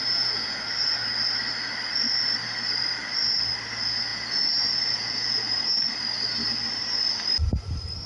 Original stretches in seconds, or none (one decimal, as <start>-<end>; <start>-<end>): 0.6-4.1; 5.8-8.1